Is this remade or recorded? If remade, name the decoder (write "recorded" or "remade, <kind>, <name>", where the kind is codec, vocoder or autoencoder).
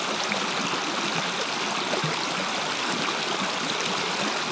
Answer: recorded